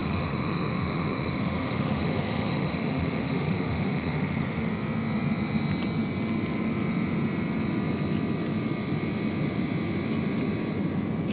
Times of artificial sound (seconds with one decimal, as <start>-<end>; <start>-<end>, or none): 0.0-4.7

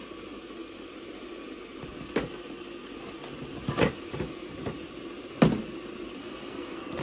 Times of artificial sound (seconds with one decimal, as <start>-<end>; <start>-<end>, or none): 6.2-7.0

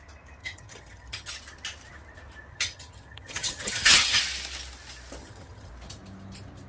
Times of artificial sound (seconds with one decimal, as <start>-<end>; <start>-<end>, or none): 0.4-1.3; 2.5-4.2; 5.2-5.7

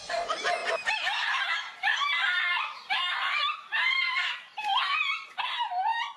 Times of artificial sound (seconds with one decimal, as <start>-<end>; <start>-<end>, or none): 0.6-4.3

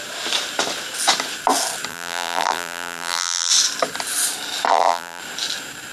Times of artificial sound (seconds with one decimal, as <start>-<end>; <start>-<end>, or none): 1.9-3.5; 4.7-5.2